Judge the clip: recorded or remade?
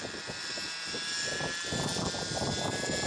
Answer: recorded